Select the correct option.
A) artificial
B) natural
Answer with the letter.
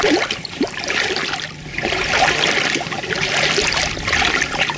A